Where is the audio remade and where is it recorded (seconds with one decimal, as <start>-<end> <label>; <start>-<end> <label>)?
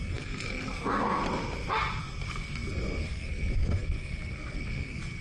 0.0-1.2 remade; 1.2-2.0 recorded; 2.0-5.2 remade